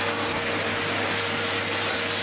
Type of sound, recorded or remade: recorded